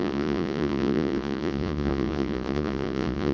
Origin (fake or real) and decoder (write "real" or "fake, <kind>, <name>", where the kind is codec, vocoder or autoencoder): fake, vocoder, Vocos